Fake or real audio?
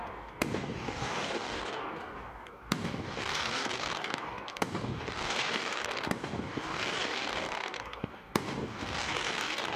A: fake